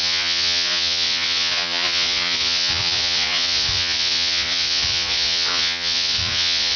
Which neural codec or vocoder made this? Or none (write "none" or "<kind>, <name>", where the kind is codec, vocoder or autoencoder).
vocoder, Vocos